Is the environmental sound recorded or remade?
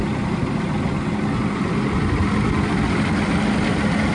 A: recorded